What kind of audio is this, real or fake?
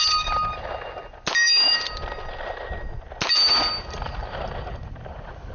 real